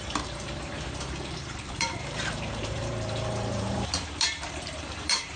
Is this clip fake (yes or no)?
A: yes